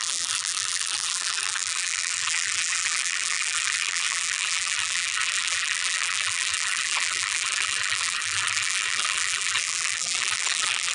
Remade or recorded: remade